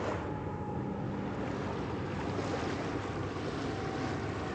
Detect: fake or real real